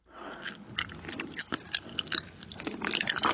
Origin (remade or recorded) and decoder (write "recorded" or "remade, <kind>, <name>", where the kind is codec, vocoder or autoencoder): recorded